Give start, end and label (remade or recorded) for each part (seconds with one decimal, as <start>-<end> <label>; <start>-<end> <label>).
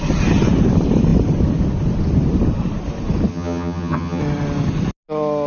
0.0-3.3 recorded; 3.3-4.2 remade; 4.2-5.5 recorded